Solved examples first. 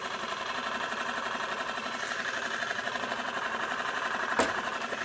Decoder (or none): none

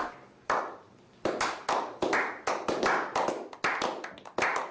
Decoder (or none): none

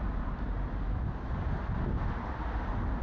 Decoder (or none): none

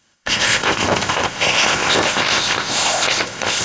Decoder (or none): codec, ZipCodec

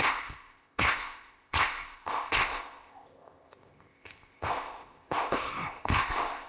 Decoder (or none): codec, ZipCodec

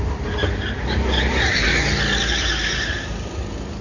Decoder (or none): none